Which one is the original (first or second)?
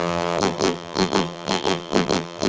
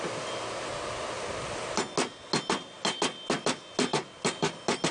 second